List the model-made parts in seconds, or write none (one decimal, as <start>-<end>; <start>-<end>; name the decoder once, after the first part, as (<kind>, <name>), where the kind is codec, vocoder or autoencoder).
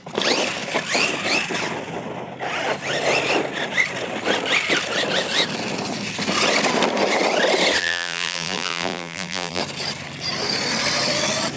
7.8-9.6 (vocoder, BigVGAN v2)